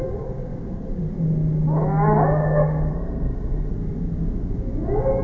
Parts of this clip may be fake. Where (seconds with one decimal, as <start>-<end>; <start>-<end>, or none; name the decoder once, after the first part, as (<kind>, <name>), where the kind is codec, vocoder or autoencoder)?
2.4-3.7 (codec, SNAC)